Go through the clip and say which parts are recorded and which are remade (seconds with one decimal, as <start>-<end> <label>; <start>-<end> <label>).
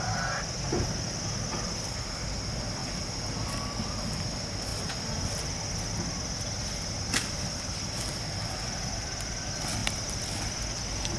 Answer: 0.0-11.2 recorded